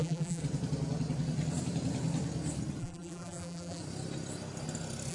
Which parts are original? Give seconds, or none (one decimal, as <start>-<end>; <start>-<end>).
0.4-2.8; 3.8-5.1